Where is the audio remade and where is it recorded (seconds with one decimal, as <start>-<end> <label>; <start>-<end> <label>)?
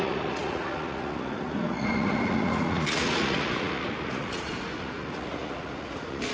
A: 0.0-6.3 remade